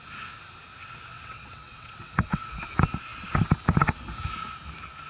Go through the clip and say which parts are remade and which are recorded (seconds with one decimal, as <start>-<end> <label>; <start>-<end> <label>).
0.0-1.1 recorded; 1.1-2.5 remade; 2.5-5.1 recorded